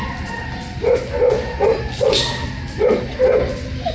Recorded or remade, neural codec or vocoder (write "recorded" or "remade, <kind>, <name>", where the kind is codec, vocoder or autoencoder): recorded